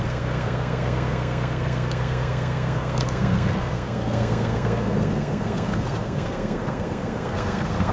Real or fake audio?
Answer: fake